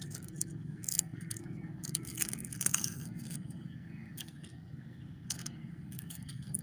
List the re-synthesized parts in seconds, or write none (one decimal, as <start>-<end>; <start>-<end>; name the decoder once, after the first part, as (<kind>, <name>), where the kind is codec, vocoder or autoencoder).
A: 0.0-6.6 (codec, SNAC)